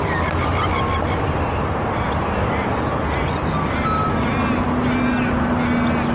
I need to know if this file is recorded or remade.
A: recorded